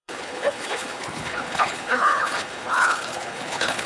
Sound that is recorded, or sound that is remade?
remade